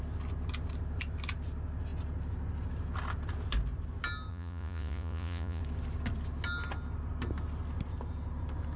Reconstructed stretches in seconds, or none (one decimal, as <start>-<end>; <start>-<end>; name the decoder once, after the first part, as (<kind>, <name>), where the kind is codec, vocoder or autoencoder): 4.3-5.6 (vocoder, Vocos)